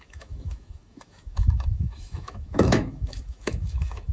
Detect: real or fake fake